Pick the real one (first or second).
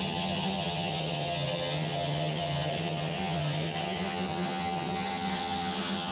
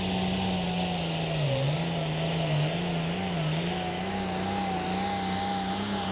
second